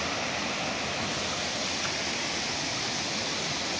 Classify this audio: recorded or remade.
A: recorded